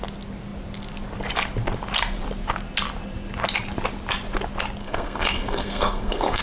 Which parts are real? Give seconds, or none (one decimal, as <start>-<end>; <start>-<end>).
0.0-4.8